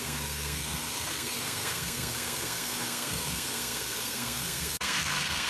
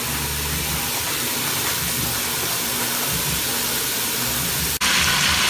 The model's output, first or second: first